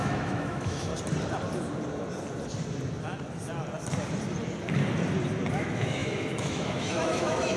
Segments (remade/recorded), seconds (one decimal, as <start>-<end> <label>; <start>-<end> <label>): 0.0-0.9 remade; 0.9-5.5 recorded; 5.5-7.6 remade